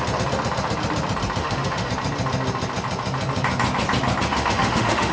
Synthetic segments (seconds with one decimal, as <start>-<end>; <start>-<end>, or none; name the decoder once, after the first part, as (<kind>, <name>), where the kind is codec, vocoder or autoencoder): 1.4-1.9 (autoencoder, DAC-VAE); 4.3-5.1